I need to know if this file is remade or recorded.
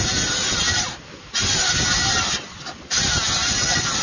recorded